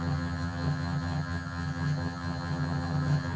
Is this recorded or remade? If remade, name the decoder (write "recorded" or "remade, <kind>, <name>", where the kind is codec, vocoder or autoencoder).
remade, vocoder, HiFi-GAN